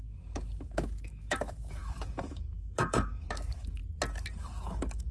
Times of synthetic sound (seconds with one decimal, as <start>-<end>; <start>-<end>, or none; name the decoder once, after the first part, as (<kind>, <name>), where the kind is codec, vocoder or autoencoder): 0.0-3.8 (autoencoder, DAC-VAE); 4.4-5.1